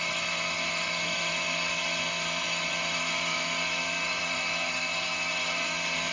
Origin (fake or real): fake